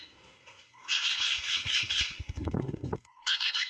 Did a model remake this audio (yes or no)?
yes